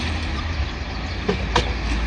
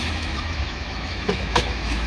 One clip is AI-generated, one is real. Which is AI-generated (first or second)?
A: second